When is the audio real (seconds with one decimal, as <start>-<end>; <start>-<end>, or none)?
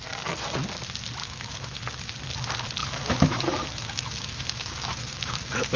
0.0-1.2; 1.8-2.8